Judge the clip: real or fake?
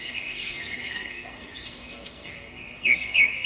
fake